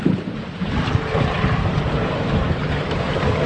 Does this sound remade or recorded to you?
remade